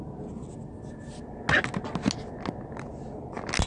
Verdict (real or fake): real